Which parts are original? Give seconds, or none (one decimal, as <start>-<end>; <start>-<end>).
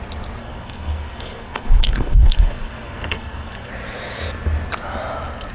0.0-0.4; 3.7-5.5